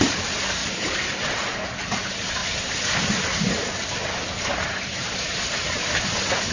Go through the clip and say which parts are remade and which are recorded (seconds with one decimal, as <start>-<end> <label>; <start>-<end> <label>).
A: 0.0-0.6 recorded; 0.6-2.0 remade; 2.0-6.5 recorded